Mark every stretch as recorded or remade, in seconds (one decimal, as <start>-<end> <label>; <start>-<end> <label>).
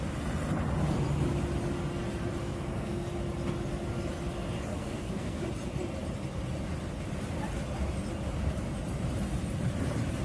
0.0-2.4 recorded; 2.4-3.1 remade; 3.1-4.7 recorded; 4.7-5.4 remade; 5.4-10.2 recorded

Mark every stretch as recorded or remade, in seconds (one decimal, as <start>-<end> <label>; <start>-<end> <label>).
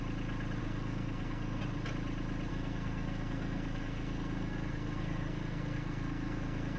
0.0-0.6 recorded; 0.6-1.6 remade; 1.6-2.5 recorded; 2.5-6.8 remade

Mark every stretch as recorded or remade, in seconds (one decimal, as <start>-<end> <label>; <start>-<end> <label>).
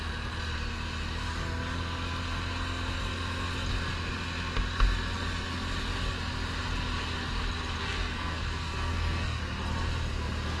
0.0-7.8 recorded; 7.8-9.4 remade; 9.4-10.6 recorded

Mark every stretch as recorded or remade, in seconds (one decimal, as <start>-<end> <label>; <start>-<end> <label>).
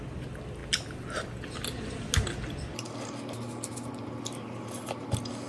0.0-5.5 recorded